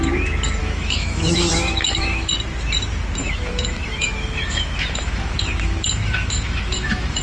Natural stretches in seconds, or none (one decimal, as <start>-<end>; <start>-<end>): 0.0-0.6; 2.3-3.2

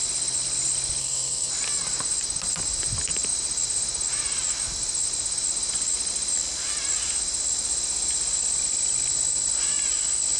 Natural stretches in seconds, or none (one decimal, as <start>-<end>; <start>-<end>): 0.0-1.0; 1.5-10.4

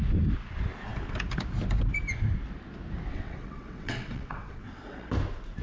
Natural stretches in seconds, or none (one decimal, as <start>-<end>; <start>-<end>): 0.0-3.1; 5.1-5.6

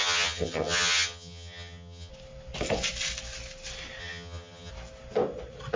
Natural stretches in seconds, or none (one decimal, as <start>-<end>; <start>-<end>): 2.1-4.0; 4.7-5.8

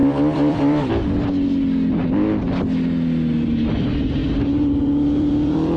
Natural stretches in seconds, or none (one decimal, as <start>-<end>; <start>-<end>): 0.9-4.2

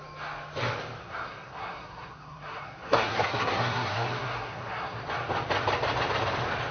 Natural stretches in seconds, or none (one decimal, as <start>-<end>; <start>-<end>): 0.0-1.0; 5.0-6.7